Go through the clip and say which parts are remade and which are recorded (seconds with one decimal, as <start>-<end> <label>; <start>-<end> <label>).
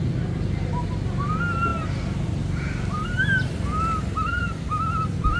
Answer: 0.0-5.4 recorded